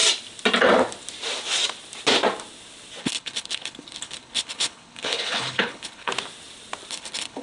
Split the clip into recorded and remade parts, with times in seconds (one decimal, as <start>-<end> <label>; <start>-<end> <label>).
0.0-3.0 recorded; 3.0-6.1 remade; 6.1-6.9 recorded; 6.9-7.4 remade